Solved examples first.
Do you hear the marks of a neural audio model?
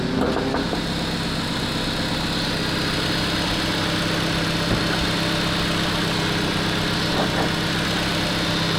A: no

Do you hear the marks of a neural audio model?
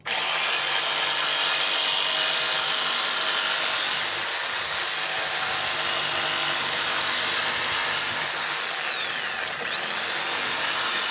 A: no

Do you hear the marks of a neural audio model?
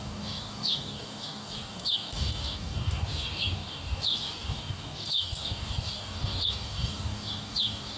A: yes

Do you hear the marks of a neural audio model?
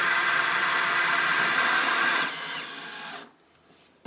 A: no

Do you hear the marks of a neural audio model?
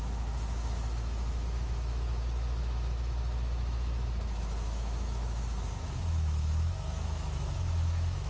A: yes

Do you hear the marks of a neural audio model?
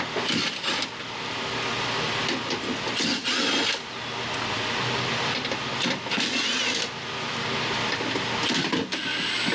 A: no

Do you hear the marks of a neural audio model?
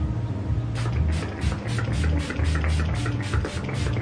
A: no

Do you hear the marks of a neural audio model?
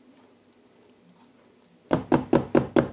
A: no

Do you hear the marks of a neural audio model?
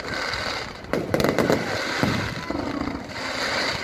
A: no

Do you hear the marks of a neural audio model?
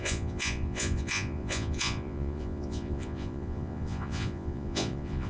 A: yes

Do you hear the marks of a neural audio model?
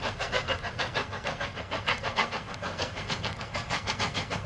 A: yes